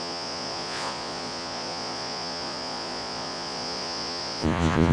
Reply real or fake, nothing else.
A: fake